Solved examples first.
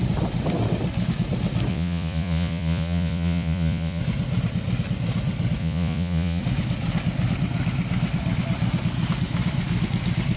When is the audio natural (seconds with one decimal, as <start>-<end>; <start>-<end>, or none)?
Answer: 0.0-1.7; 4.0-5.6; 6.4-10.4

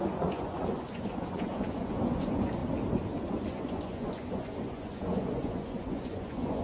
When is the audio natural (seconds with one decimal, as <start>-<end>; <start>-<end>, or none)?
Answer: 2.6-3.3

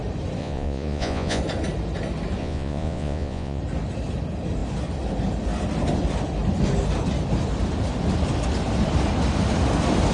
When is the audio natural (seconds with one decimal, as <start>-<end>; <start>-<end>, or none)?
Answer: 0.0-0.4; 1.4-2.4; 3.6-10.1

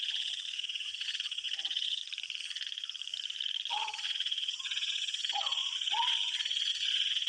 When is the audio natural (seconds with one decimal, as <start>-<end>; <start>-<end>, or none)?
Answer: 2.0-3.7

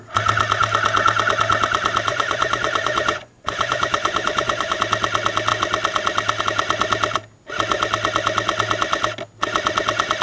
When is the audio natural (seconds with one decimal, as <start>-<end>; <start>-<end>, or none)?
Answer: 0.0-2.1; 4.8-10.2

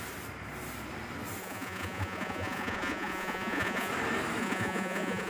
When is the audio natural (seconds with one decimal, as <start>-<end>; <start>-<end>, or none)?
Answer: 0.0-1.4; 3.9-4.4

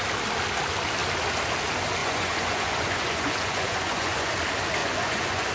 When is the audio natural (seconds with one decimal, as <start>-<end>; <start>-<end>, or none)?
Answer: 0.0-2.0; 4.3-4.8